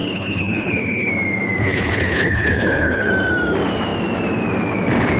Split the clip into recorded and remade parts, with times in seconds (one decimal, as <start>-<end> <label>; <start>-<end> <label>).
0.0-1.1 remade; 1.1-1.6 recorded; 1.6-3.1 remade; 3.1-5.2 recorded